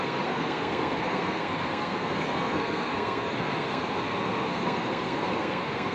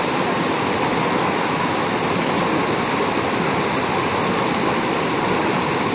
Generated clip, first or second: first